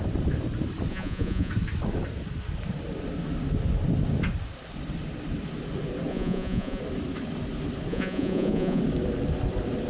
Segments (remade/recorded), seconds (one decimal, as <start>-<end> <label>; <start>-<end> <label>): 0.0-0.9 recorded; 0.9-1.5 remade; 1.5-6.1 recorded; 6.1-6.8 remade; 6.8-7.9 recorded; 7.9-8.8 remade; 8.8-9.9 recorded